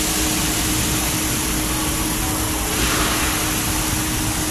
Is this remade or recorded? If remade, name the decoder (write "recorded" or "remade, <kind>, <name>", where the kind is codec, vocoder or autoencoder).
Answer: recorded